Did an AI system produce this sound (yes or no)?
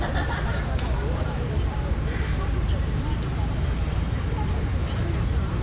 yes